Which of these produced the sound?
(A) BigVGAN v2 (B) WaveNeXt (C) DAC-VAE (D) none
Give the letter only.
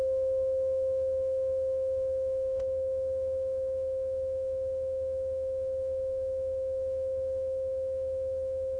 C